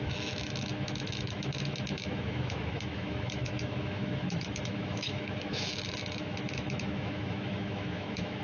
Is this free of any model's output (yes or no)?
no